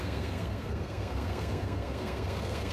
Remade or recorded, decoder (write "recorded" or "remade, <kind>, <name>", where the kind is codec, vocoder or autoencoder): remade, codec, SNAC